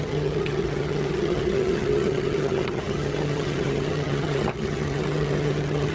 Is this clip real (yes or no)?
no